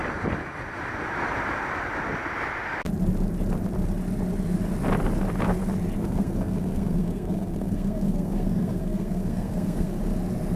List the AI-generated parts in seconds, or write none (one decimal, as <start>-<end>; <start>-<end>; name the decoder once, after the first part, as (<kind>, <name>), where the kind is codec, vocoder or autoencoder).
6.0-10.0 (codec, SNAC)